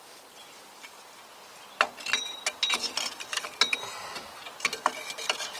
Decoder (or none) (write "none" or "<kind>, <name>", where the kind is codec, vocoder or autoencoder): none